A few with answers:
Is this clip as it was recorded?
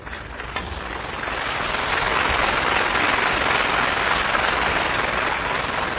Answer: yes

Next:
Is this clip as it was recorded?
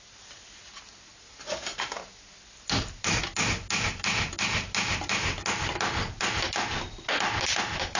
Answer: yes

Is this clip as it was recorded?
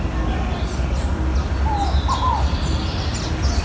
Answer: yes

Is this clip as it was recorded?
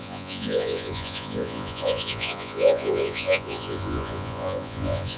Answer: no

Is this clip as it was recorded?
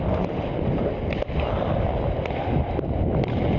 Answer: yes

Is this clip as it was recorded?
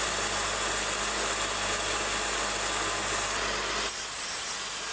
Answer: yes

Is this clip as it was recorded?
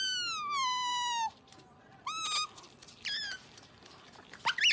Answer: yes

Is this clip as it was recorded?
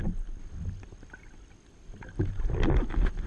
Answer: yes